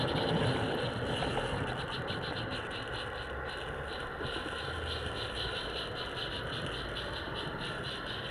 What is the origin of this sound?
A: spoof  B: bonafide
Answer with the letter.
B